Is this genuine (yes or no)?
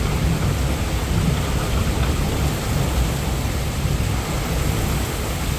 yes